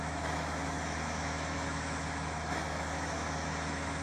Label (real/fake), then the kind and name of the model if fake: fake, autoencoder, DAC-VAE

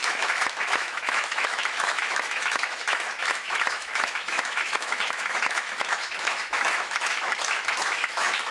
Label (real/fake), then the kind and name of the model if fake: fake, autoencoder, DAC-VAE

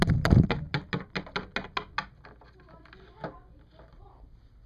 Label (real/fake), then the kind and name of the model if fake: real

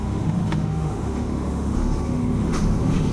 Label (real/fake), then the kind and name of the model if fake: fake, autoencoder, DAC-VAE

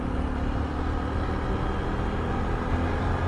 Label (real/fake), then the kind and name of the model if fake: real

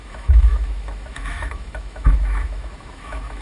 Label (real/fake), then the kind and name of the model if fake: fake, autoencoder, DAC-VAE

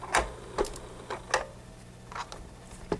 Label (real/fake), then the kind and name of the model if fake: real